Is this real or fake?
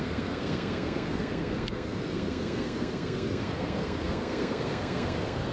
fake